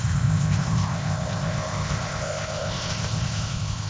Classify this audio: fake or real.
fake